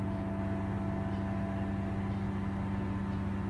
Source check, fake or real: real